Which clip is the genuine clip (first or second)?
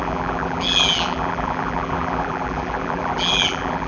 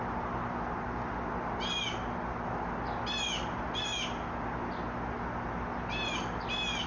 second